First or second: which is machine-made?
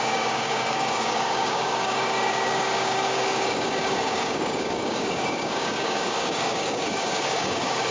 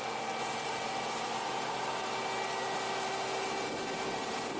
first